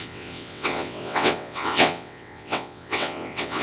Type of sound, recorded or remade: remade